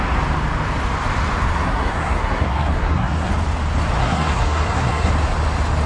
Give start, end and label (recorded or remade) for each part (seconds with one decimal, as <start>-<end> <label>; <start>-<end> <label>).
0.0-1.5 recorded; 1.5-3.3 remade; 3.3-4.0 recorded; 4.0-5.1 remade; 5.1-5.9 recorded

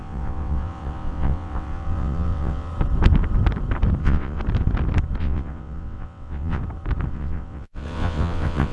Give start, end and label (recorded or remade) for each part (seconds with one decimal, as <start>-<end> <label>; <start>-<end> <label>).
0.0-2.7 remade; 2.7-4.0 recorded; 4.0-4.4 remade; 4.4-5.2 recorded; 5.2-6.6 remade; 6.6-7.1 recorded; 7.1-8.7 remade

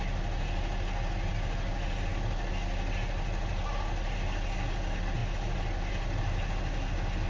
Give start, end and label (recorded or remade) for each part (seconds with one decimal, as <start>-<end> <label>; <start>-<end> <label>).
0.0-7.3 recorded

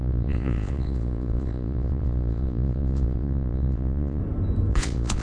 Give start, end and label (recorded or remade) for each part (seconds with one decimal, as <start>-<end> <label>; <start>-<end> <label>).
0.0-4.2 remade; 4.2-4.7 recorded; 4.7-5.2 remade

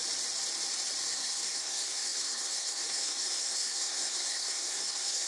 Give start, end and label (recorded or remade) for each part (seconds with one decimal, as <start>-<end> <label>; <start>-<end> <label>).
0.0-1.0 recorded; 1.0-5.3 remade